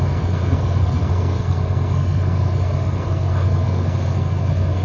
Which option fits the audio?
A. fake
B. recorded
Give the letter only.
A